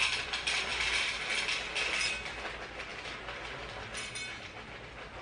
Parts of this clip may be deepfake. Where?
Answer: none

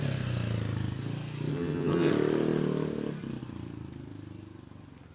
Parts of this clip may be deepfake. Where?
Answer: 1.5-2.1 (vocoder, HiFi-GAN)